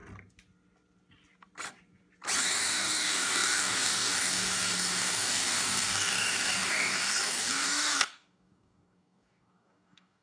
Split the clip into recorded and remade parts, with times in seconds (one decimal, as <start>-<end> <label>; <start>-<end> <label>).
0.0-2.4 recorded; 2.4-10.2 remade